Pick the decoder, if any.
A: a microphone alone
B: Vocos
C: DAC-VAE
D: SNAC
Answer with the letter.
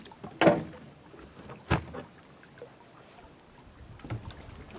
A